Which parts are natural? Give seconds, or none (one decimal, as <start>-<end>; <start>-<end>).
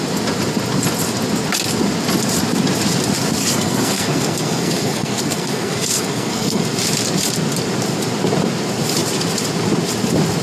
0.0-3.4; 6.6-10.4